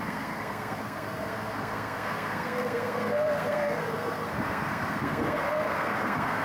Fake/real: fake